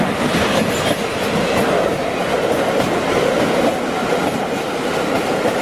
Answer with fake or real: real